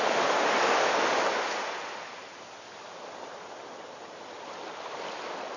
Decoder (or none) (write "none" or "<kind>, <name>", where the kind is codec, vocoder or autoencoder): none